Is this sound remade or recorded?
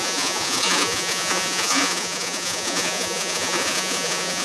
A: remade